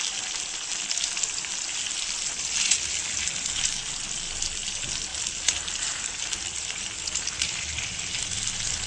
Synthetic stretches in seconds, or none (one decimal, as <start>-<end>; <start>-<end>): none